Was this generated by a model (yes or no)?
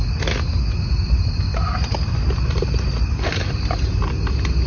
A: no